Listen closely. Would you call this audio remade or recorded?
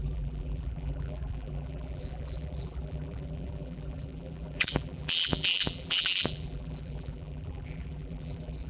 remade